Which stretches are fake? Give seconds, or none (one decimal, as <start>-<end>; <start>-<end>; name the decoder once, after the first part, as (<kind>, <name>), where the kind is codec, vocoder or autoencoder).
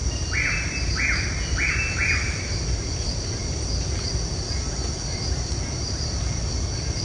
none